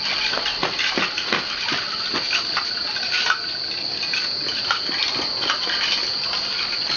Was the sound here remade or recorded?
recorded